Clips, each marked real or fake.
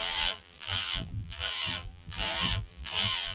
fake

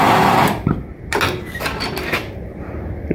fake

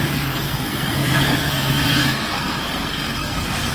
fake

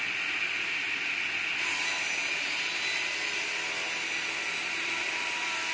real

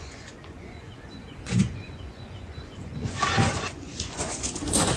fake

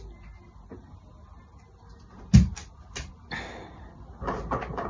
real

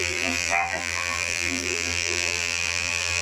fake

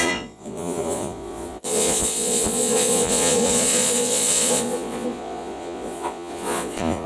fake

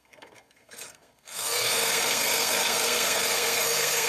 fake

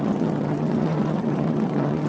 fake